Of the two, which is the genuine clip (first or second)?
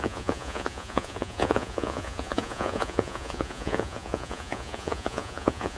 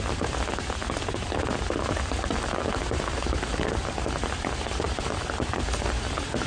second